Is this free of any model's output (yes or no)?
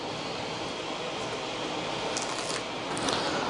yes